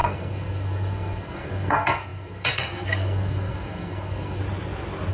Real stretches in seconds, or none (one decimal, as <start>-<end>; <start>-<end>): 4.4-5.1